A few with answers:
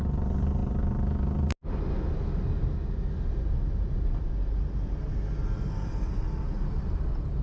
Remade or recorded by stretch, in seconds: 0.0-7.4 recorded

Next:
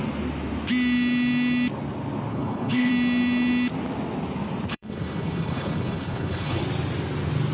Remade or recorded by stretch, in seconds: 0.0-2.3 recorded; 2.3-2.9 remade; 2.9-4.7 recorded; 4.7-6.6 remade; 6.6-7.5 recorded

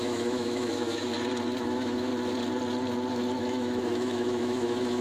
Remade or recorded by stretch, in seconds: 0.0-1.1 remade; 1.1-1.6 recorded; 1.6-2.1 remade; 2.1-3.4 recorded; 3.4-5.0 remade

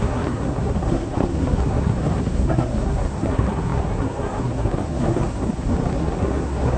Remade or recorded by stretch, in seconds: 0.0-6.8 remade